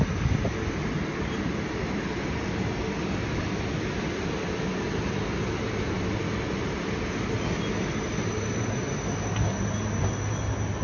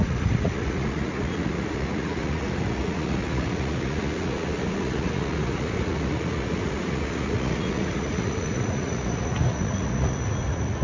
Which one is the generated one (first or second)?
second